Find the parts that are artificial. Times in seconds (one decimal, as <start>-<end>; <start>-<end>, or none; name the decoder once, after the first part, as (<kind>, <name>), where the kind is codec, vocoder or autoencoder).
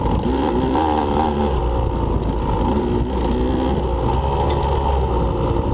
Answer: 0.0-1.6 (vocoder, BigVGAN v2); 4.9-5.7